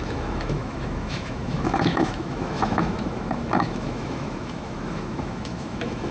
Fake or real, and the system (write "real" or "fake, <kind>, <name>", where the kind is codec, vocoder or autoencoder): fake, autoencoder, DAC-VAE